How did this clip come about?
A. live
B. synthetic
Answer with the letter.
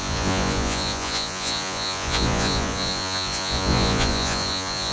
B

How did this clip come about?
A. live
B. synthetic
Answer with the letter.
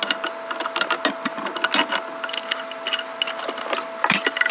A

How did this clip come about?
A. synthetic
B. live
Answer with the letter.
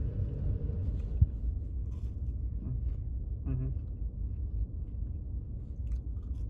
B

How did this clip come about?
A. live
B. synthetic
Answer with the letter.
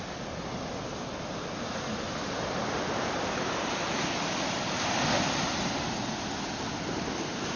A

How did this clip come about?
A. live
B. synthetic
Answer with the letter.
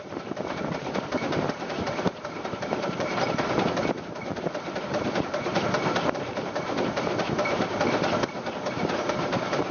B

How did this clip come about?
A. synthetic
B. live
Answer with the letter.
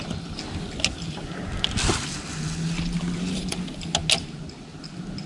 B